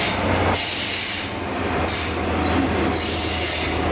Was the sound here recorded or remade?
recorded